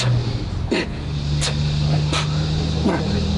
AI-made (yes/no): no